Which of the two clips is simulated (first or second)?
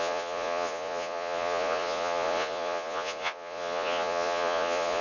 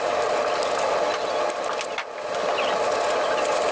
first